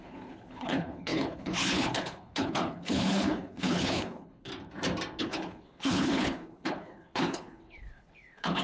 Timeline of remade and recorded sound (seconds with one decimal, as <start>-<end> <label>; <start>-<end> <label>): 0.0-4.5 remade; 4.5-5.2 recorded; 5.2-8.6 remade

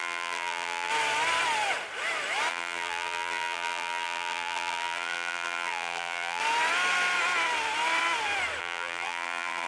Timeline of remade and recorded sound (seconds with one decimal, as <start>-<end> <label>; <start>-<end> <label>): 0.0-0.9 remade; 0.9-2.5 recorded; 2.5-6.4 remade; 6.4-8.6 recorded; 8.6-9.7 remade

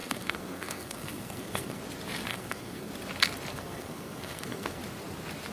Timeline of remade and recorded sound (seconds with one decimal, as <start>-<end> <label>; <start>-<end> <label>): 0.0-1.8 remade; 1.8-2.3 recorded; 2.3-2.9 remade; 2.9-3.5 recorded; 3.5-4.8 remade; 4.8-5.5 recorded